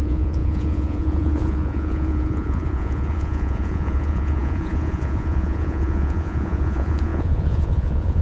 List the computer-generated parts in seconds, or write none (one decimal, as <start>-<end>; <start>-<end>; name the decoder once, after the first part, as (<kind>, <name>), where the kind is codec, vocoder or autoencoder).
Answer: 0.0-8.2 (vocoder, Vocos)